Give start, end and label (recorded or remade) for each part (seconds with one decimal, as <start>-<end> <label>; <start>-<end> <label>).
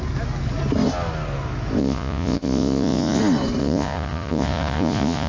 0.0-1.8 recorded; 1.8-3.2 remade; 3.2-3.6 recorded; 3.6-5.3 remade